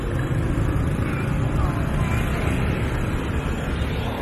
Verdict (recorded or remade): recorded